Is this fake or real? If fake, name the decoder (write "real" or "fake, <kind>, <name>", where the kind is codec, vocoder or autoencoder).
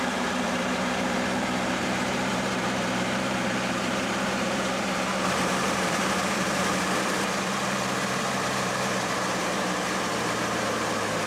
fake, vocoder, BigVGAN v2